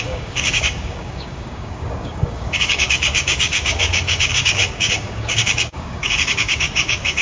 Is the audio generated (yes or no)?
yes